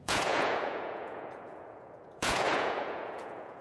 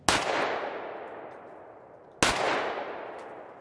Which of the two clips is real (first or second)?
second